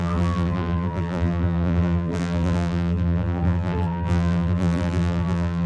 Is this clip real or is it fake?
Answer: fake